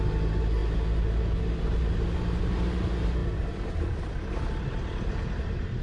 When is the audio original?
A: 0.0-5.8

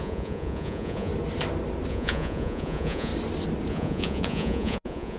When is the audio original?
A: 1.1-1.9; 3.1-3.7

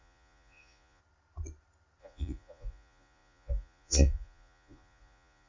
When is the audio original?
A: 1.0-2.0

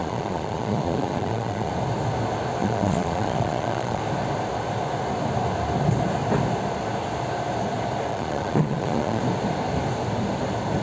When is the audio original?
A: 1.7-2.6; 4.0-8.1; 9.2-10.8

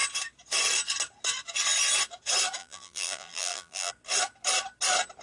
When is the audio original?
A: 0.0-2.6; 3.9-5.2

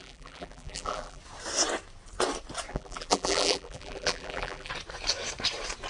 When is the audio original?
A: 1.2-2.7; 4.7-5.9